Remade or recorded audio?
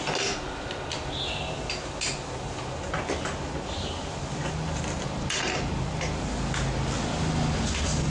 recorded